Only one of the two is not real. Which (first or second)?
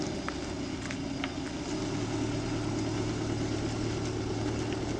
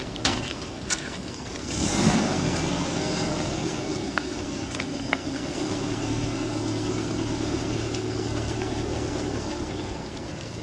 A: second